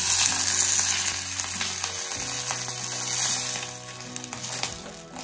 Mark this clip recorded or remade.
recorded